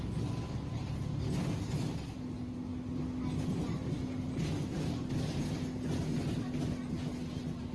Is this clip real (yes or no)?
yes